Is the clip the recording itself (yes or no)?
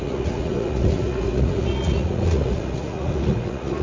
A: no